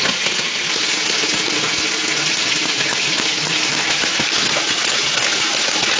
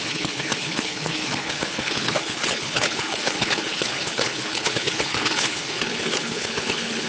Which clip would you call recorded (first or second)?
first